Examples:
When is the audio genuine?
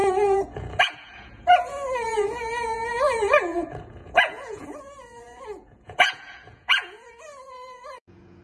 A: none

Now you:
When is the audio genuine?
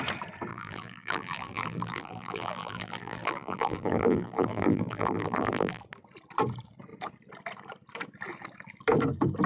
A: 0.0-0.5; 5.8-9.5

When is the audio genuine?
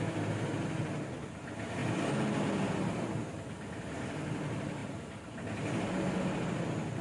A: 0.0-7.0